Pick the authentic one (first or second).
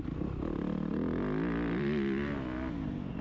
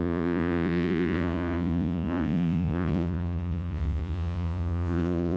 first